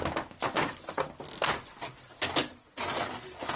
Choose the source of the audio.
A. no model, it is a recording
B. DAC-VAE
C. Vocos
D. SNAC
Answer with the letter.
A